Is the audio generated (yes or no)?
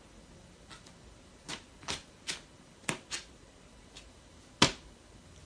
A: no